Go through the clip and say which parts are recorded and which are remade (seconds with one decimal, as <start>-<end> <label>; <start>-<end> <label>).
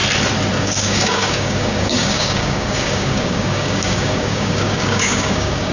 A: 0.0-0.6 recorded; 0.6-5.7 remade